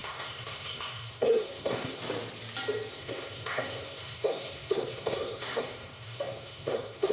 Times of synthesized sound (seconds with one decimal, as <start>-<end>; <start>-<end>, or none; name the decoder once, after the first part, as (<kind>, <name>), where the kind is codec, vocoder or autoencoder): 0.0-2.0 (codec, SNAC); 2.9-7.1